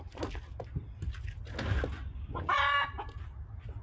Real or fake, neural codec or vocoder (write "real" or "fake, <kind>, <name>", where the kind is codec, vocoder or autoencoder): real